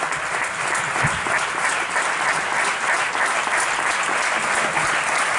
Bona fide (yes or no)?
yes